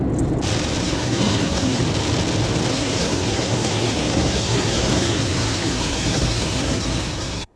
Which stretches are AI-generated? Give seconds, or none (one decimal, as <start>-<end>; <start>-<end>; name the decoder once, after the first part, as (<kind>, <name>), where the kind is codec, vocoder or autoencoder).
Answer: 0.8-1.8 (codec, SNAC); 2.7-7.6

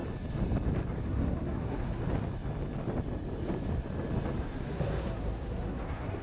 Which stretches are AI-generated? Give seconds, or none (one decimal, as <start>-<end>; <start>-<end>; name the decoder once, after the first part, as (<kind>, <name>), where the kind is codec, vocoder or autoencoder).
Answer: 1.0-2.0 (codec, SNAC); 4.4-6.2